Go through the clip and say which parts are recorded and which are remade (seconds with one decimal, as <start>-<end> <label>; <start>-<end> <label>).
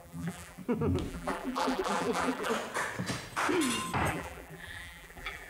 0.0-0.6 remade; 0.6-1.1 recorded; 1.1-2.5 remade; 2.5-4.1 recorded; 4.1-5.5 remade